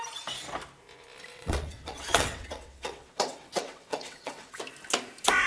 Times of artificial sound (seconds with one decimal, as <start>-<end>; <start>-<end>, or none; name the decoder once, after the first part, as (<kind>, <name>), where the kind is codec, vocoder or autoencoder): 1.3-4.6 (vocoder, WaveNeXt)